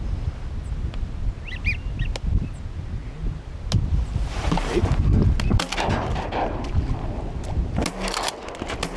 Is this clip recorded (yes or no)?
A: yes